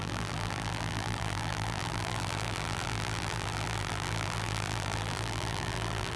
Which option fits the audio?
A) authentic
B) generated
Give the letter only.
B